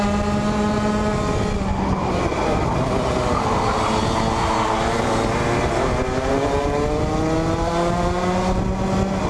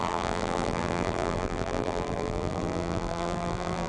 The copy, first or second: second